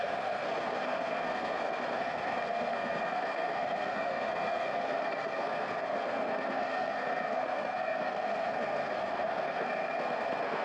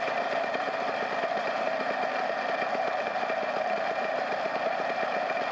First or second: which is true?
second